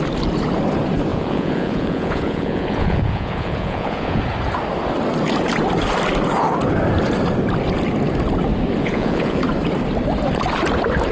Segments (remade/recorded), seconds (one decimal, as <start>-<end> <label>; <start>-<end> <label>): 0.0-1.1 recorded; 1.1-4.2 remade; 4.2-8.8 recorded; 8.8-9.4 remade; 9.4-11.1 recorded